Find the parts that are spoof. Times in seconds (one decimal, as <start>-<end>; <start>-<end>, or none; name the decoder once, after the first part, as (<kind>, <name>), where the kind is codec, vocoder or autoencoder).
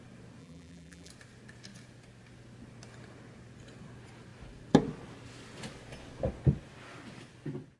0.4-1.1 (vocoder, BigVGAN v2)